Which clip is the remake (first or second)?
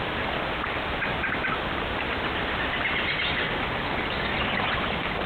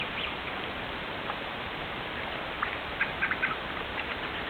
second